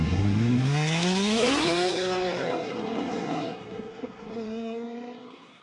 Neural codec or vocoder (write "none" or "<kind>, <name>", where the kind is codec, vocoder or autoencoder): codec, SNAC